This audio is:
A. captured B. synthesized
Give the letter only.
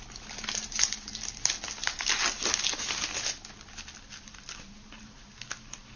A